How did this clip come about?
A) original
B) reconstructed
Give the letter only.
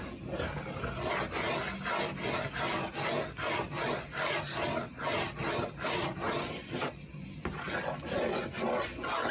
A